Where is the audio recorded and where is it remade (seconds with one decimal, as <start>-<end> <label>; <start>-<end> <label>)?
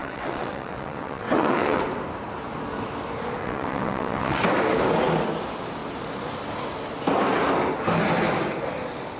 0.0-1.8 remade; 1.8-3.4 recorded; 3.4-4.4 remade; 4.4-9.2 recorded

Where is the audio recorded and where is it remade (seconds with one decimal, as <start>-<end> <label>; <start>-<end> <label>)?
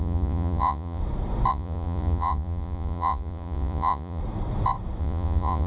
0.0-1.0 remade; 1.0-1.5 recorded; 1.5-4.2 remade; 4.2-5.0 recorded; 5.0-5.7 remade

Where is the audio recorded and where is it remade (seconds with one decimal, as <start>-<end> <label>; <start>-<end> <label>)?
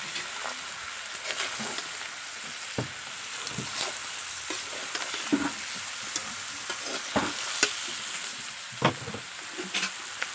0.0-4.0 recorded; 4.0-5.0 remade; 5.0-10.3 recorded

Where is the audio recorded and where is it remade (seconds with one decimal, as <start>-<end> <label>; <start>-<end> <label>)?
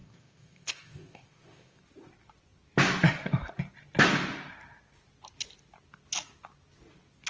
0.0-1.8 remade; 1.8-7.3 recorded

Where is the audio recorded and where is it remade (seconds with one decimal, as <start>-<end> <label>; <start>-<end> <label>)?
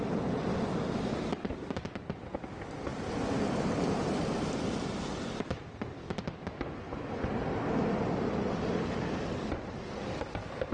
0.0-2.9 recorded; 2.9-4.1 remade; 4.1-10.7 recorded